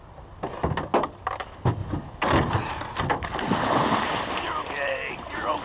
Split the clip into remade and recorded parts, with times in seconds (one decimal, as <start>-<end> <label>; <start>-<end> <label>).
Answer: 0.0-1.8 recorded; 1.8-2.3 remade; 2.3-4.5 recorded; 4.5-5.1 remade; 5.1-5.6 recorded